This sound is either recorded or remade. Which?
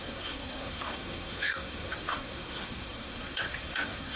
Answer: remade